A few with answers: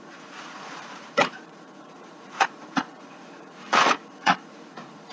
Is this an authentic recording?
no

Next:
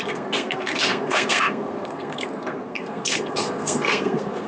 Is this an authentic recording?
no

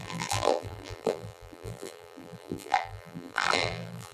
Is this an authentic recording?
no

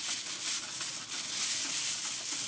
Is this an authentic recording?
yes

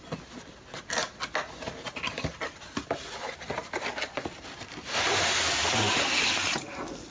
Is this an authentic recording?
yes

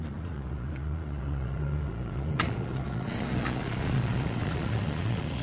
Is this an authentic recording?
no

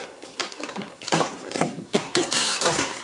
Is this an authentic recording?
no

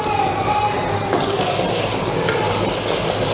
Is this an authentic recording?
yes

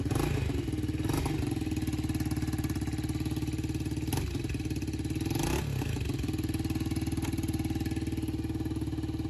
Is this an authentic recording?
yes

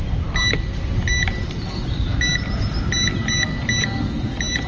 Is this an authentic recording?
yes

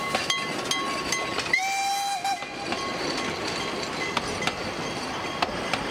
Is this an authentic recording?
yes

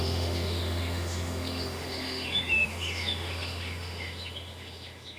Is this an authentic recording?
no